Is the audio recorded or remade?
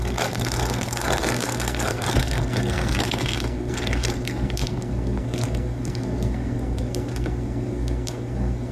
remade